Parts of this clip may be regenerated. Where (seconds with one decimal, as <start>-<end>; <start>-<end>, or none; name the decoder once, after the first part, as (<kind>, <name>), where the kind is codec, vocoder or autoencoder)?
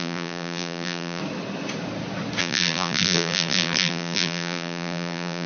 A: 0.0-1.2 (vocoder, BigVGAN v2); 2.4-5.5